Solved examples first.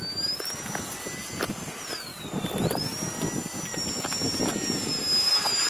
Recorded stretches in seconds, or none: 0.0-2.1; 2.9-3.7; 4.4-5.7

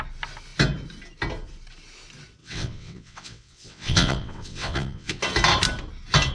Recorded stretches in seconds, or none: 0.0-2.4; 5.2-6.3

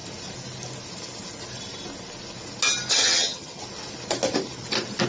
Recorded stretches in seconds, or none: 0.0-3.0; 3.6-5.1

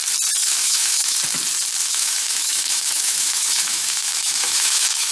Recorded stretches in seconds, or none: 0.0-0.4; 1.2-1.8

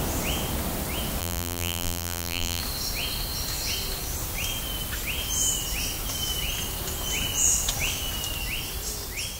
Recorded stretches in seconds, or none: 0.0-1.2; 2.6-9.4

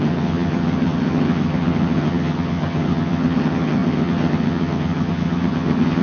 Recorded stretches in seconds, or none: none